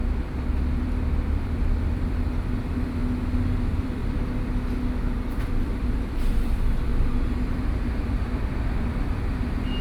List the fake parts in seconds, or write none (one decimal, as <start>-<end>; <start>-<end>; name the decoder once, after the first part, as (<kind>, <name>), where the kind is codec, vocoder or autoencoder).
0.8-3.0 (vocoder, BigVGAN v2); 3.6-4.0; 5.1-6.9; 7.5-9.8